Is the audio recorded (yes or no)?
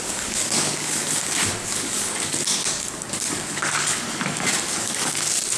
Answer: no